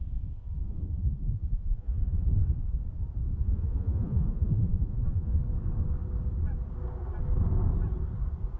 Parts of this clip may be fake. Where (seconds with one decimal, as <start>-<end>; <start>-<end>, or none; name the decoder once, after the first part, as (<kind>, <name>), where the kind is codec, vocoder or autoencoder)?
0.6-2.2 (vocoder, Vocos); 3.4-5.4